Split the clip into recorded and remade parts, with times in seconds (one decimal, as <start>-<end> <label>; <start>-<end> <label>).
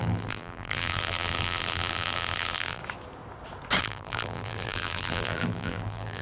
0.0-2.8 remade; 2.8-3.8 recorded; 3.8-6.2 remade